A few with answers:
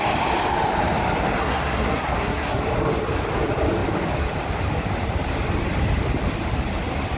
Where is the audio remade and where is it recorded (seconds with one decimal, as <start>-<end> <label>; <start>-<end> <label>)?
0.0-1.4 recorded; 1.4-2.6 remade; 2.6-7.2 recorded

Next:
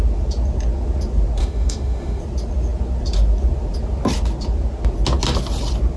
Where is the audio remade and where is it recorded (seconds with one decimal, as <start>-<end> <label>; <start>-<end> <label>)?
0.0-1.4 recorded; 1.4-2.2 remade; 2.2-6.0 recorded

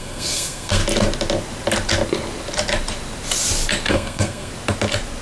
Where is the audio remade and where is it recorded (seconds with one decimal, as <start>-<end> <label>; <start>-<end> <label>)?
0.0-0.8 remade; 0.8-3.9 recorded; 3.9-4.5 remade; 4.5-5.2 recorded

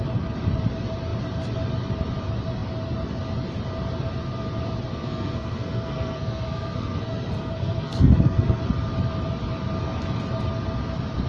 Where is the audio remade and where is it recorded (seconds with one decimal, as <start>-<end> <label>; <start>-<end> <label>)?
0.0-4.9 recorded; 4.9-8.6 remade; 8.6-11.3 recorded